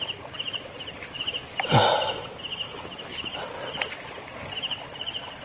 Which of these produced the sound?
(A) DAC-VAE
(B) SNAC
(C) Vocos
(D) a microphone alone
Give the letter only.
D